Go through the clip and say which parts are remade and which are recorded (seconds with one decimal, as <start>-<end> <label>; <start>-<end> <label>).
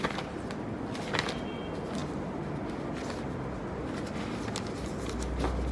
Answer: 0.0-5.7 recorded